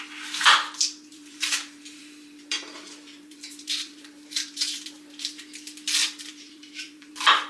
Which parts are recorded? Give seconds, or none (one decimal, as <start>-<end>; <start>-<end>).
0.0-1.1; 5.4-6.0; 7.1-7.5

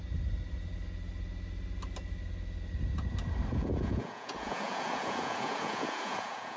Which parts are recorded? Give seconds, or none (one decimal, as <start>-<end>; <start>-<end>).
0.0-3.5